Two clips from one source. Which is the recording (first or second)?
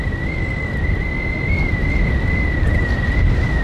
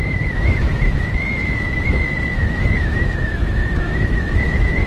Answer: first